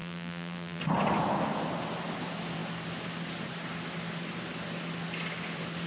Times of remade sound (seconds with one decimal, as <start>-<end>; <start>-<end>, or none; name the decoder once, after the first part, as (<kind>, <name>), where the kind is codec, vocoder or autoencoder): 0.0-0.8 (vocoder, BigVGAN v2)